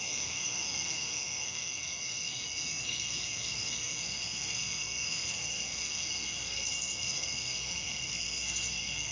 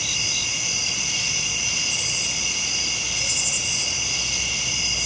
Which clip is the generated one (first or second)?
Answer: first